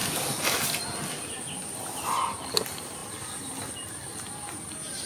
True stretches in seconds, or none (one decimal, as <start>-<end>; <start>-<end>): 0.0-5.1